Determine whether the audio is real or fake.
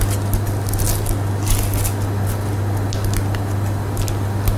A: real